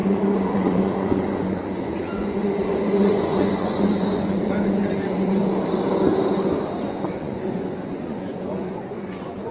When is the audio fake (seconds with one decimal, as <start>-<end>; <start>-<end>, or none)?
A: 0.0-5.4; 6.8-9.5